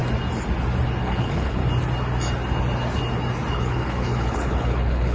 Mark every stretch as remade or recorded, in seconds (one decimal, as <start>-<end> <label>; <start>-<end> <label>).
0.0-1.0 recorded; 1.0-1.6 remade; 1.6-3.5 recorded; 3.5-5.1 remade

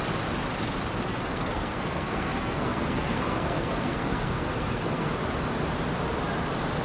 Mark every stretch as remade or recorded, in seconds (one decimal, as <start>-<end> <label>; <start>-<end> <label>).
0.0-1.1 recorded; 1.1-5.1 remade; 5.1-6.8 recorded